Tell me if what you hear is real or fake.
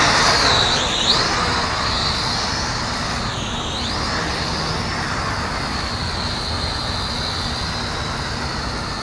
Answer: real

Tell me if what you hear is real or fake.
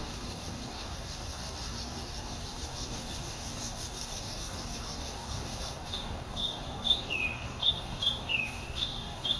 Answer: fake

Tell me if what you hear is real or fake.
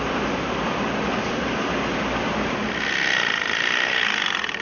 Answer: real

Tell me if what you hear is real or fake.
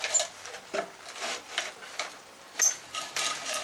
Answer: fake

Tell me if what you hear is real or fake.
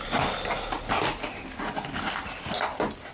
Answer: real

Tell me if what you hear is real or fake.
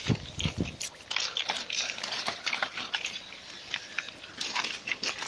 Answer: real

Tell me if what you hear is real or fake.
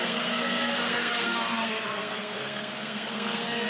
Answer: fake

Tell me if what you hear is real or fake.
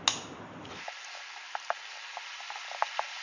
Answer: real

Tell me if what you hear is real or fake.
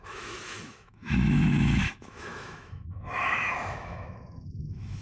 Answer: fake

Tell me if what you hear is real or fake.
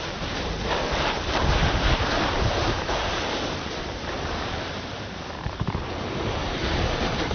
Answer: fake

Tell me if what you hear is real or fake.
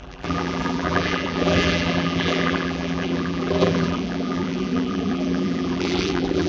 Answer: fake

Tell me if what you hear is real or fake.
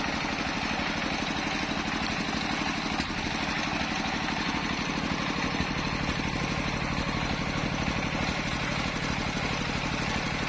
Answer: real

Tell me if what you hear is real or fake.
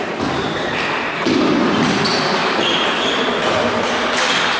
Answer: real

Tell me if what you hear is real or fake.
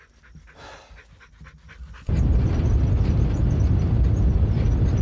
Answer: real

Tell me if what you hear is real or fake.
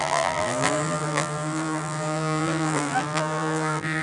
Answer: fake